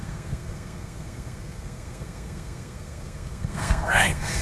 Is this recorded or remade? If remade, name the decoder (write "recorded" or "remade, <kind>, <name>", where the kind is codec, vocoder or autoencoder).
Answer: remade, codec, SNAC